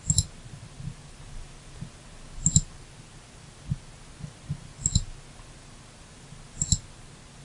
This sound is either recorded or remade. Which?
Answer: recorded